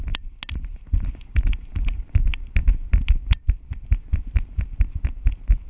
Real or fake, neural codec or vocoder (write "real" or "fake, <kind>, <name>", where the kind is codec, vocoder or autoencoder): real